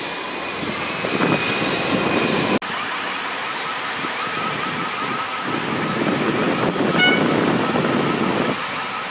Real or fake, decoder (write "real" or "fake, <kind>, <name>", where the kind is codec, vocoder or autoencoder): real